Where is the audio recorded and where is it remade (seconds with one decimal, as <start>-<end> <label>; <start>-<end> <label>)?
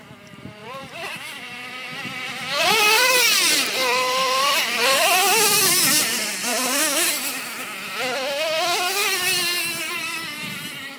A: 0.0-6.8 remade; 6.8-9.8 recorded; 9.8-11.0 remade